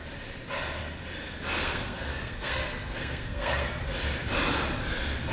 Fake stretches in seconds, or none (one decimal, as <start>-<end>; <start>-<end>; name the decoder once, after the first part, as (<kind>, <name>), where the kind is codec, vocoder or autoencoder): 1.6-3.8 (codec, SNAC)